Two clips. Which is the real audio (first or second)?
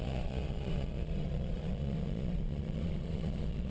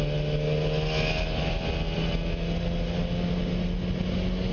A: second